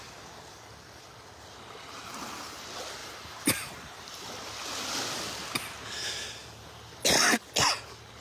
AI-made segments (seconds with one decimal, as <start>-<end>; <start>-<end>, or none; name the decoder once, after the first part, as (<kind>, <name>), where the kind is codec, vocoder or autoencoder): 3.0-4.5 (vocoder, BigVGAN v2)